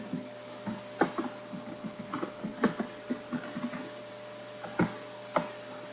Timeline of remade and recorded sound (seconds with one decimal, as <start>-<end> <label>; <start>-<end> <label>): 0.0-5.9 recorded